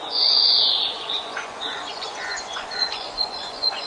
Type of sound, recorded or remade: remade